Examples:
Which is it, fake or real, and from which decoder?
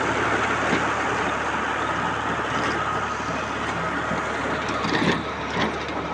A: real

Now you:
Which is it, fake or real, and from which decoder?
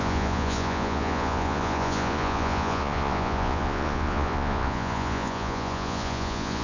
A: fake, vocoder, Vocos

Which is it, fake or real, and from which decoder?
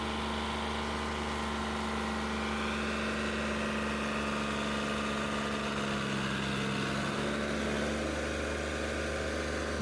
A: real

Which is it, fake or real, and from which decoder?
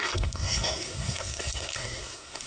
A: fake, codec, SNAC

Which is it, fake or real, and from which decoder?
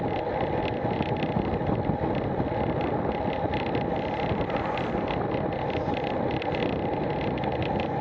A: real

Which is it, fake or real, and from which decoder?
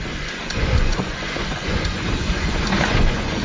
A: fake, vocoder, Vocos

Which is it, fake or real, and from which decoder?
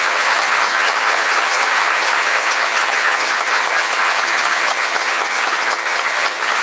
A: fake, vocoder, HiFi-GAN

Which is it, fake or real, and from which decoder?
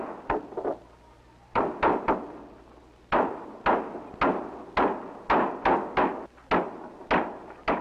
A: real